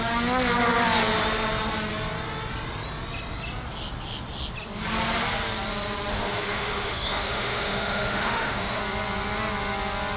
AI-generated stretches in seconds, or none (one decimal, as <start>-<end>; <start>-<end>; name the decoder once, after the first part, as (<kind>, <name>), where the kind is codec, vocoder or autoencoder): 6.1-8.8 (autoencoder, DAC-VAE)